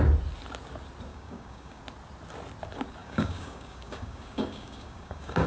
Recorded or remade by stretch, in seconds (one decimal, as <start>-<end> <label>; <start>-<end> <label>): 0.0-1.1 recorded; 1.1-1.8 remade; 1.8-3.0 recorded; 3.0-5.5 remade

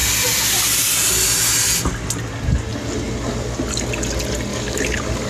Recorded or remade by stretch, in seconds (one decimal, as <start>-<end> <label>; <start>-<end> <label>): 0.0-4.5 recorded; 4.5-5.3 remade

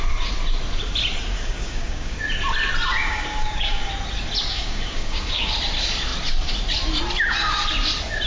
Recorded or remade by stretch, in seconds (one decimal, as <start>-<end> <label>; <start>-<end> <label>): 0.0-1.3 recorded; 1.3-2.2 remade; 2.2-3.0 recorded; 3.0-3.9 remade; 3.9-4.5 recorded; 4.5-5.5 remade; 5.5-8.3 recorded